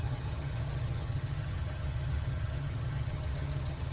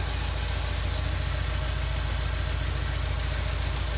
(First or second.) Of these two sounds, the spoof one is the first